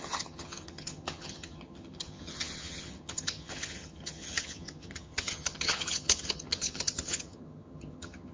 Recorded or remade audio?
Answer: remade